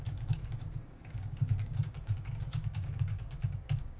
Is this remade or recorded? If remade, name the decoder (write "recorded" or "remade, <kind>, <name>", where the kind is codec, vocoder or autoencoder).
remade, codec, DAC